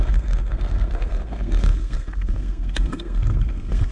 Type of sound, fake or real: fake